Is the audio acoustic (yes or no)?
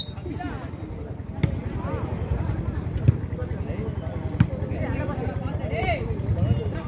yes